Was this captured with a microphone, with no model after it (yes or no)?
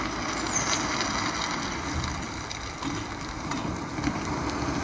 yes